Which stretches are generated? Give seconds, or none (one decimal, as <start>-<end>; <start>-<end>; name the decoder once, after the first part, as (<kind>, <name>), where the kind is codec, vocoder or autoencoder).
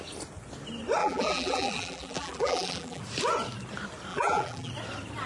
1.0-3.0 (vocoder, BigVGAN v2); 4.1-4.7